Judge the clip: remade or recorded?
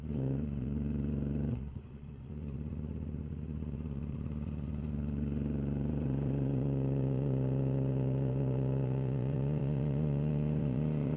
remade